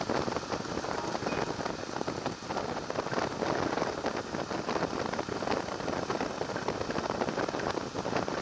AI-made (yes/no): no